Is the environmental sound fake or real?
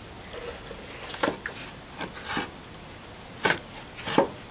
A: real